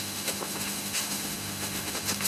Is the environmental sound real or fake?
fake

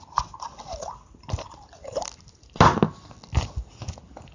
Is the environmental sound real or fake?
real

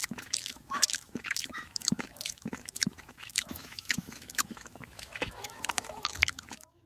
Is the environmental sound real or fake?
fake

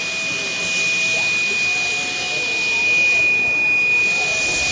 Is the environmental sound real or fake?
real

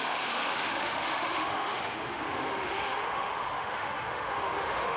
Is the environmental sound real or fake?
fake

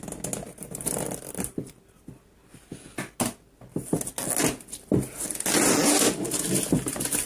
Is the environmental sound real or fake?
real